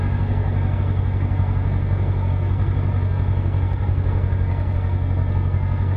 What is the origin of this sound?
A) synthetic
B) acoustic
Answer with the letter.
A